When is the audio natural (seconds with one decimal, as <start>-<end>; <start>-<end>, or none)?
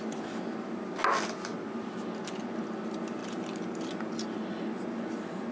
0.0-5.5